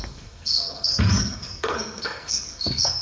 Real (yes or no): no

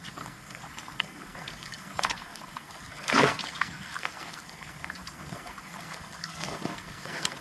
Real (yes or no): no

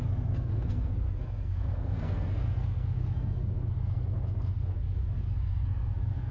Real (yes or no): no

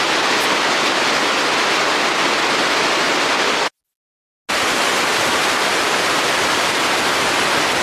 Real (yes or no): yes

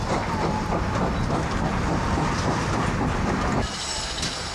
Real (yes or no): yes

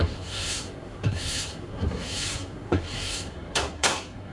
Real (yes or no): no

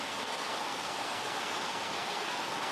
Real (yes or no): no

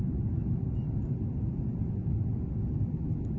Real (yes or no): yes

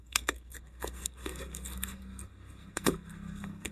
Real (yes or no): no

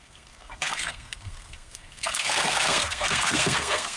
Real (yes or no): no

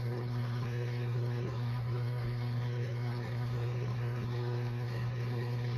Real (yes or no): no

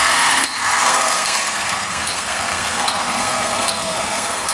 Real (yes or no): no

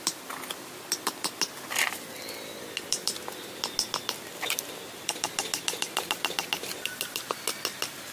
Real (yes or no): yes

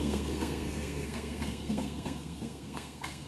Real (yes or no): no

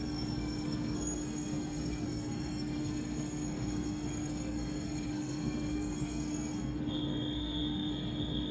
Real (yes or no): no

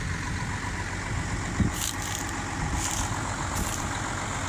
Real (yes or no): yes